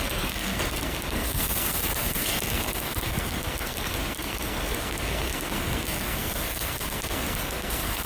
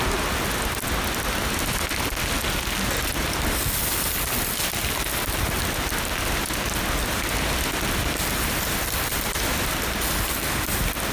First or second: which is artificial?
first